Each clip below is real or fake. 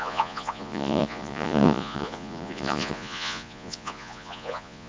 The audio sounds fake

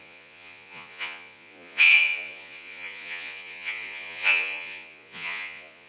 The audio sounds fake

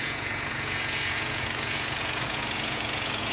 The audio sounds fake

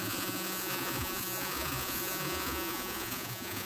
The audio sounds fake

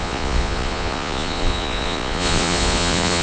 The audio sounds fake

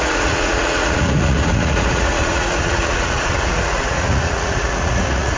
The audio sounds fake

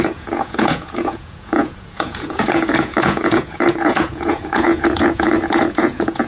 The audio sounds fake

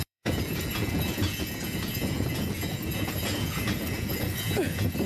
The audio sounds fake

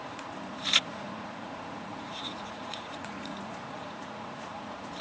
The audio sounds fake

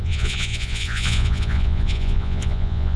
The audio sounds fake